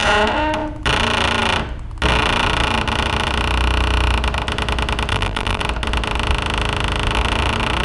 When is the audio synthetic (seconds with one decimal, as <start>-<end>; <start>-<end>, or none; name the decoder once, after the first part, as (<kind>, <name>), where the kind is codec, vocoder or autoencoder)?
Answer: 5.1-5.6 (vocoder, BigVGAN v2)